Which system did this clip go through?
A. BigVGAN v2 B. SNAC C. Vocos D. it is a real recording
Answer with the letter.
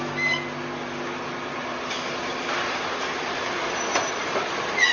D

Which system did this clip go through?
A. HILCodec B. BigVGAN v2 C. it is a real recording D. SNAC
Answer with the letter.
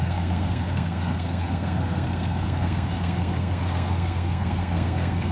D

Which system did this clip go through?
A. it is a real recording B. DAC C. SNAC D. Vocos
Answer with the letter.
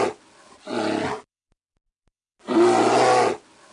A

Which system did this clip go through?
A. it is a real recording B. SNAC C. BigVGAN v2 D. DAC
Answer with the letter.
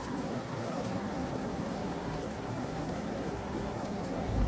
B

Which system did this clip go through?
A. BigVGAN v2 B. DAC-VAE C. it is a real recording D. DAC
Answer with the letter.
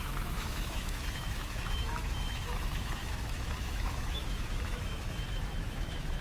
B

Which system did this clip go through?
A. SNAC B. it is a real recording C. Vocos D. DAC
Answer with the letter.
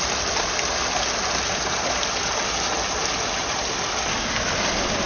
B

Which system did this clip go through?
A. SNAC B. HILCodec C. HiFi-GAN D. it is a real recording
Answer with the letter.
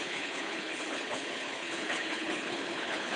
B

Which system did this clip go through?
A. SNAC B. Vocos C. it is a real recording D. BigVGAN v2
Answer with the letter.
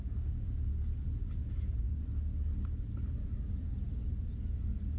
C